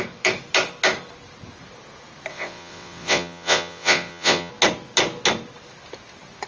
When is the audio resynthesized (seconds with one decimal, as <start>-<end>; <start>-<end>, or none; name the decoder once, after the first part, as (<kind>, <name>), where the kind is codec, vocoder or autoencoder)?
2.3-4.5 (vocoder, WaveNeXt)